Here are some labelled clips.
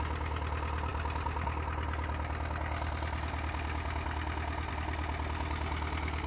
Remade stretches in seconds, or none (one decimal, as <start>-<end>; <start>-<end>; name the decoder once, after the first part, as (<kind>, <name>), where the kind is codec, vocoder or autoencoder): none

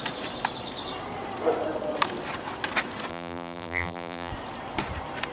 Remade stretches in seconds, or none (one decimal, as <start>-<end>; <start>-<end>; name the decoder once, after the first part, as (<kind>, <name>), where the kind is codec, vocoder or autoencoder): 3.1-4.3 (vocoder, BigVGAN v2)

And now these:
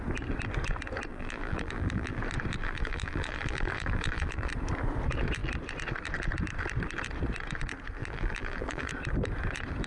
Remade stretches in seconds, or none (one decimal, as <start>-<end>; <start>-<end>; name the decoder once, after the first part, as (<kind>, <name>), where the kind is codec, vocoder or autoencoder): 1.1-2.2 (vocoder, BigVGAN v2); 2.6-4.5; 8.0-8.9

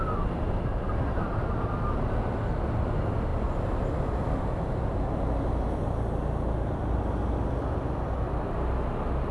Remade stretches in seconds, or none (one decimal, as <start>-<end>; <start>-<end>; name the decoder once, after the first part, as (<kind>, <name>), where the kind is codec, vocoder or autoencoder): 3.3-4.5 (vocoder, BigVGAN v2)